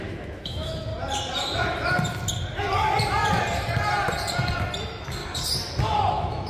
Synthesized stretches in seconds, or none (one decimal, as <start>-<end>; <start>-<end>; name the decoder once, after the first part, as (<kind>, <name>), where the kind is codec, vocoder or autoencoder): 0.0-0.9 (autoencoder, DAC-VAE); 4.8-5.2; 6.1-6.5